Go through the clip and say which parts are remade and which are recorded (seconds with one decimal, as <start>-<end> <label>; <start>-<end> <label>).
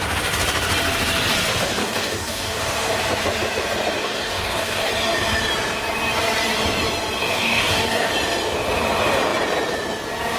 0.0-1.8 recorded; 1.8-3.0 remade; 3.0-4.0 recorded; 4.0-4.9 remade; 4.9-7.2 recorded; 7.2-8.1 remade; 8.1-10.4 recorded